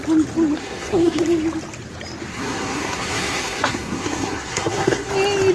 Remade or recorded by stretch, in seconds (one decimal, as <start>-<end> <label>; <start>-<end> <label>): 0.0-0.6 recorded; 0.6-1.2 remade; 1.2-2.3 recorded; 2.3-5.1 remade; 5.1-5.5 recorded